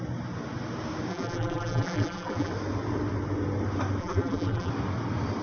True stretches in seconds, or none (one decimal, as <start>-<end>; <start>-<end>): 0.0-1.1; 2.5-4.0; 4.7-5.4